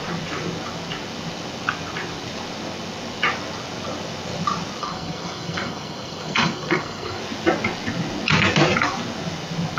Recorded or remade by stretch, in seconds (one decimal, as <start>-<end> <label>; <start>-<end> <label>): 0.0-4.8 recorded; 4.8-7.2 remade; 7.2-9.8 recorded